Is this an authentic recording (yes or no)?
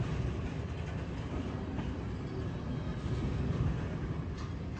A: yes